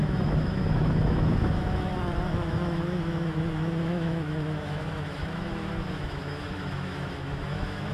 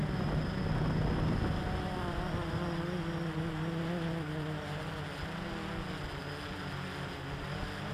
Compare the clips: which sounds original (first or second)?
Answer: second